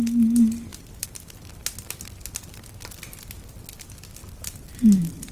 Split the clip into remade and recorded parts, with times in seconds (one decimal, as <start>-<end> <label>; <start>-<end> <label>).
0.0-0.7 recorded; 0.7-1.3 remade; 1.3-4.2 recorded; 4.2-5.3 remade